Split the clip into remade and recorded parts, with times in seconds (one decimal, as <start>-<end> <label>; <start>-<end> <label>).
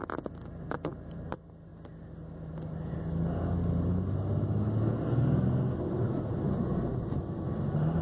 0.0-8.0 recorded